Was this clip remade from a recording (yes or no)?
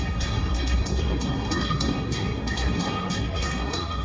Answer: yes